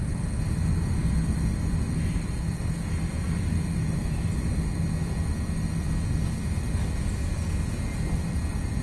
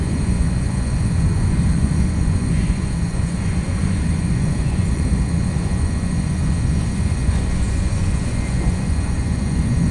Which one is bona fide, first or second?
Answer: first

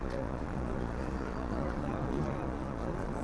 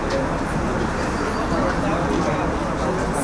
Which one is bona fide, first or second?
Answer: second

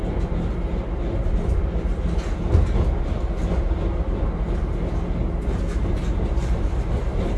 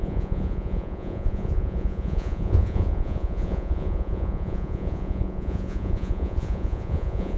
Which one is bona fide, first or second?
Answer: first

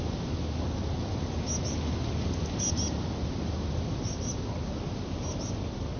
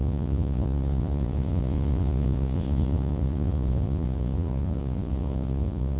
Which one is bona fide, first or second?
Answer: first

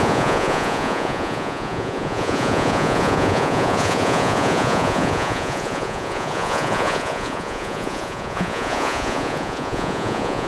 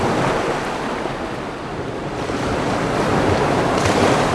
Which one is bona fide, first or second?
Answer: second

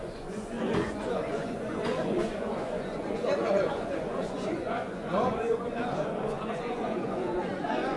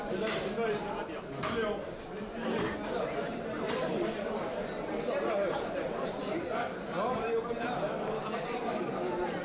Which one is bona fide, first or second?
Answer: second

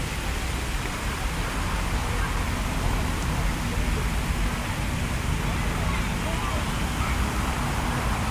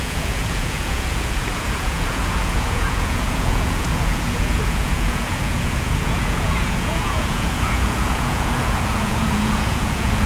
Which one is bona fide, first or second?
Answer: first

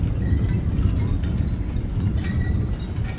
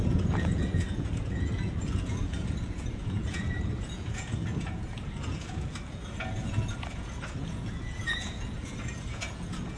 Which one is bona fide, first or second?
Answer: first